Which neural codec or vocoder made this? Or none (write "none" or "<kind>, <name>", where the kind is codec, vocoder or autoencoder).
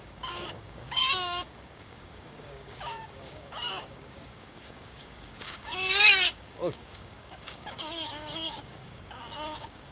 codec, DAC